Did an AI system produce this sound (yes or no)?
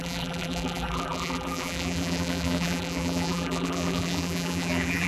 yes